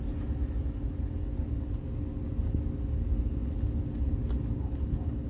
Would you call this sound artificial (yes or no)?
no